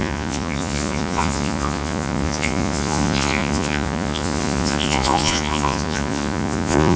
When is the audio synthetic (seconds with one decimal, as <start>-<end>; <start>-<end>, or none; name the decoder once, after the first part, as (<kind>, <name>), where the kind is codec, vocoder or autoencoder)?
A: 0.0-7.0 (vocoder, Vocos)

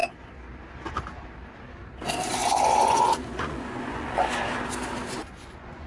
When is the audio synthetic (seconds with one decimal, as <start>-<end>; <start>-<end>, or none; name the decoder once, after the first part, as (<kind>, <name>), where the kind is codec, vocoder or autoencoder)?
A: 2.4-4.4 (vocoder, Vocos); 5.2-5.9

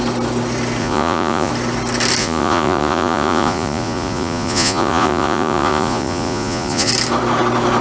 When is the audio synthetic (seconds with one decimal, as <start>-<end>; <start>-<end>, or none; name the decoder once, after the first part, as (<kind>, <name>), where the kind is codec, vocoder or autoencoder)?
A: 0.8-1.5 (vocoder, Vocos); 2.2-6.9